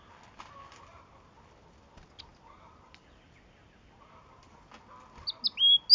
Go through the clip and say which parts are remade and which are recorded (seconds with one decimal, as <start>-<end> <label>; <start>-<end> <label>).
0.0-5.9 recorded